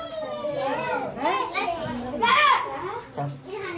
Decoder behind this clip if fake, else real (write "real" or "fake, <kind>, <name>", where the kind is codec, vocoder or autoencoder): real